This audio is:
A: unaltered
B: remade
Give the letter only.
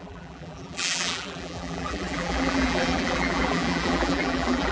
B